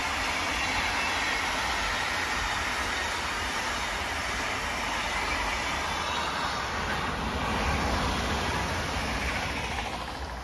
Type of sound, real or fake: real